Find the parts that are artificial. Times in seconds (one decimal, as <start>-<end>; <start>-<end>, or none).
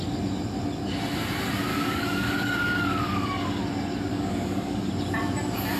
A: 1.7-3.6; 4.1-4.9